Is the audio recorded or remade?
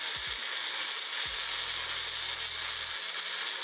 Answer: recorded